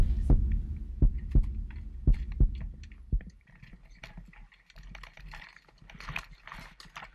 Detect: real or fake real